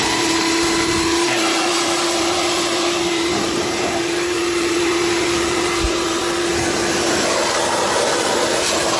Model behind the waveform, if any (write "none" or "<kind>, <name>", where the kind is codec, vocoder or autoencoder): vocoder, BigVGAN v2